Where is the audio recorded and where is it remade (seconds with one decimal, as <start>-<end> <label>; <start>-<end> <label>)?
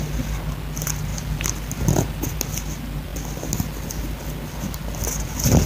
0.0-5.7 recorded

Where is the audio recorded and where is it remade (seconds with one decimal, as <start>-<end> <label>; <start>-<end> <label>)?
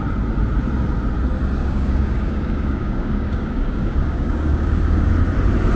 0.0-1.6 recorded; 1.6-5.1 remade; 5.1-5.8 recorded